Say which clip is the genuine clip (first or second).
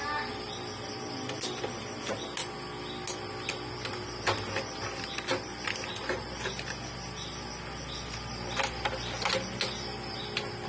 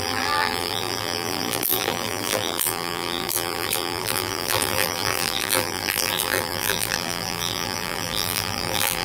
first